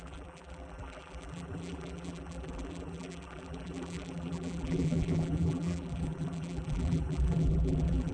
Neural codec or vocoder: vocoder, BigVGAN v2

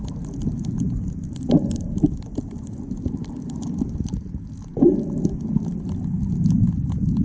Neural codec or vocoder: none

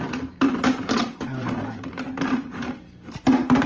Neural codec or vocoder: vocoder, BigVGAN v2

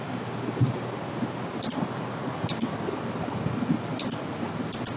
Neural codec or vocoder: none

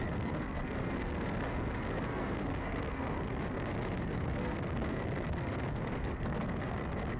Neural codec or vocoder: codec, SNAC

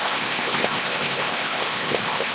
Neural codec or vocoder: codec, ZipCodec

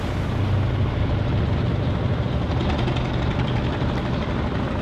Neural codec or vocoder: none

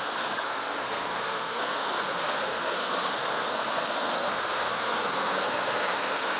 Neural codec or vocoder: codec, SNAC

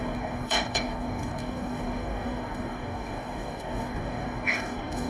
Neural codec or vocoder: codec, DAC